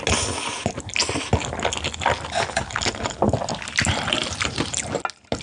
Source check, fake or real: real